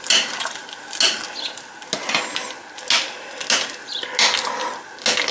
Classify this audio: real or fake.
real